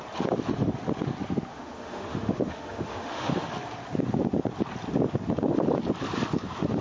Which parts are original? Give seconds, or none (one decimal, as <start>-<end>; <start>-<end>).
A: 0.0-1.5; 3.5-6.8